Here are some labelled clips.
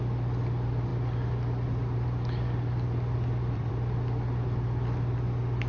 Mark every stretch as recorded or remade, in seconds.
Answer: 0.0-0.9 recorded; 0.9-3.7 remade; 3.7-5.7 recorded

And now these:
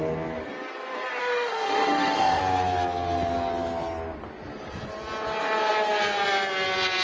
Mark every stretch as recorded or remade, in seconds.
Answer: 0.0-1.2 recorded; 1.2-2.4 remade; 2.4-7.0 recorded

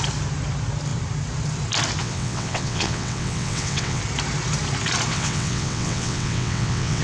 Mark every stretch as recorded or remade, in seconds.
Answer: 0.0-2.0 recorded; 2.0-4.0 remade; 4.0-5.1 recorded; 5.1-7.0 remade

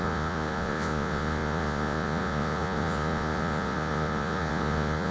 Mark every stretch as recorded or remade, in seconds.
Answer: 0.0-5.1 remade

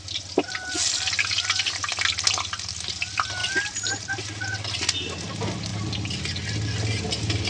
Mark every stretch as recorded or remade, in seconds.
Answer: 0.0-3.4 recorded; 3.4-4.1 remade; 4.1-5.7 recorded; 5.7-6.2 remade; 6.2-7.5 recorded